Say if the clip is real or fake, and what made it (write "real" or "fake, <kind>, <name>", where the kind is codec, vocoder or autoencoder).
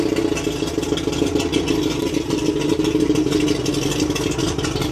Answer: real